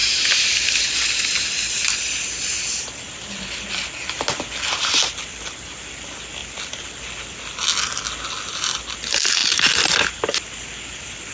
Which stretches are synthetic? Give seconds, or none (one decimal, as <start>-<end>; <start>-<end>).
none

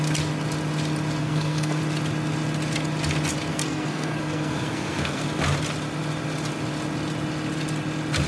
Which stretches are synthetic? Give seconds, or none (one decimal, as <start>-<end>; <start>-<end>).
1.2-1.8; 3.5-5.2

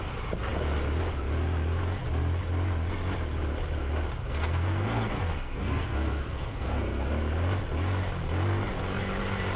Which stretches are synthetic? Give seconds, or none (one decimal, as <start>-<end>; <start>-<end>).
4.3-7.1

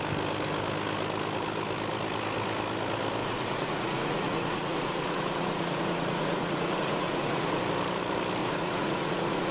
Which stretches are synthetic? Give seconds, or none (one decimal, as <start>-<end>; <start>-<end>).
3.2-7.6; 8.4-9.5

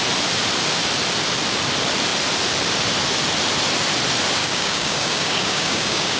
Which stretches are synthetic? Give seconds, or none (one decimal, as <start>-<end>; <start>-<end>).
4.4-6.2

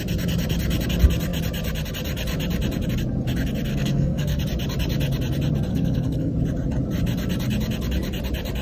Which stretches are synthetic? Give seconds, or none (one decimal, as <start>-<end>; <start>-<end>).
3.7-4.4; 5.7-6.3